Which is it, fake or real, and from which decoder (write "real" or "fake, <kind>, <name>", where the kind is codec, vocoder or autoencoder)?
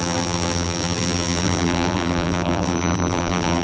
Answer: fake, vocoder, BigVGAN v2